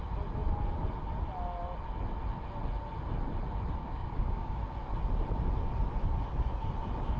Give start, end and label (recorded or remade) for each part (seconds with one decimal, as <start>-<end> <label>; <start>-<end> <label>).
0.0-3.8 recorded; 3.8-4.6 remade; 4.6-7.2 recorded